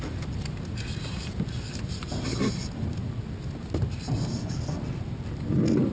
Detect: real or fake real